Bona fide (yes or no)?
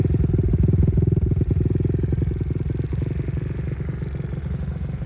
no